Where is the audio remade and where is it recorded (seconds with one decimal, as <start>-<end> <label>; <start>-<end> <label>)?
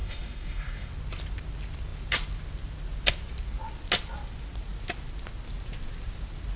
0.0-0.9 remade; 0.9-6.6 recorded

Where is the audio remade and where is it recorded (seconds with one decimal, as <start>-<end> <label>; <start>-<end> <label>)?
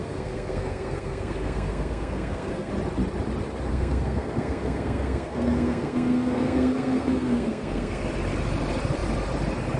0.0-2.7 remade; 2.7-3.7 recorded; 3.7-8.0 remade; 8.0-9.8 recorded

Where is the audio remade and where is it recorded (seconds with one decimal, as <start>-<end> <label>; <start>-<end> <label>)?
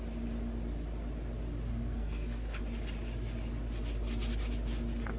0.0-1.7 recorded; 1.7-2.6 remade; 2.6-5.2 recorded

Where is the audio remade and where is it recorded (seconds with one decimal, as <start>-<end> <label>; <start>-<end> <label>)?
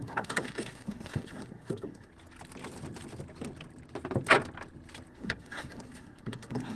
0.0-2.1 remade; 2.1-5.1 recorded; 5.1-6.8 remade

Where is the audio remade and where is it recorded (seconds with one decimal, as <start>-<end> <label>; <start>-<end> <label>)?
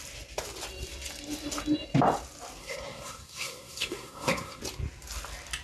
0.0-2.6 recorded; 2.6-4.6 remade; 4.6-5.6 recorded